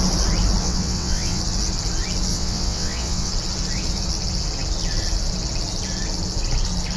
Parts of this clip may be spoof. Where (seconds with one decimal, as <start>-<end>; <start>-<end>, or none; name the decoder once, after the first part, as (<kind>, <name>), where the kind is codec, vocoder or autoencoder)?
0.6-1.4 (vocoder, WaveNeXt); 2.3-3.3